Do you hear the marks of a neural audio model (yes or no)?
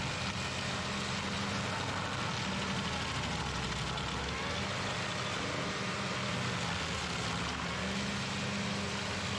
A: no